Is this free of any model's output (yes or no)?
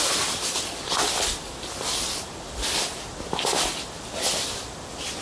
yes